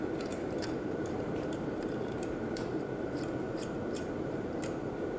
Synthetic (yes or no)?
yes